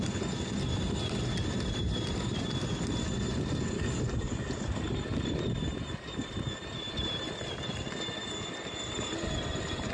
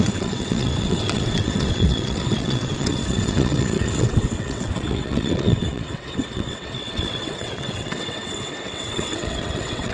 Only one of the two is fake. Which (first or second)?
second